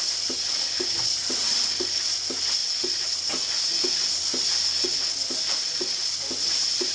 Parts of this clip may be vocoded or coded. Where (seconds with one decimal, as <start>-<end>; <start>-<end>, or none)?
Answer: none